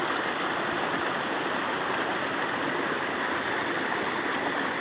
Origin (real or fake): real